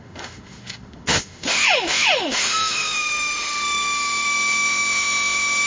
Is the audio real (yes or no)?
no